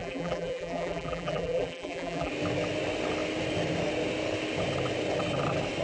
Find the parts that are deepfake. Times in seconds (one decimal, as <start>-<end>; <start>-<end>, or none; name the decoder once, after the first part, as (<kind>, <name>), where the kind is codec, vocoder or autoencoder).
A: 0.0-2.3 (vocoder, BigVGAN v2)